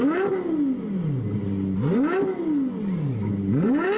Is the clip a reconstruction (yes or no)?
no